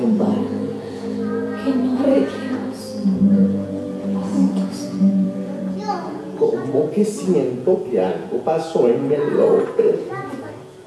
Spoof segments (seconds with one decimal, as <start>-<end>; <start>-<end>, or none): 0.0-10.9